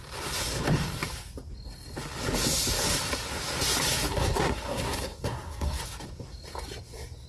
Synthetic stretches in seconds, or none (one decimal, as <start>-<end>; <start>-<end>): 4.1-5.8